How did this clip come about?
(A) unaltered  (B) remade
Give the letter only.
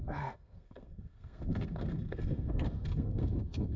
B